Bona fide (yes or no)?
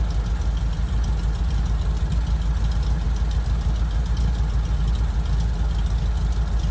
yes